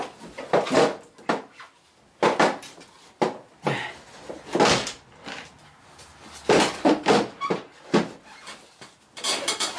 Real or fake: real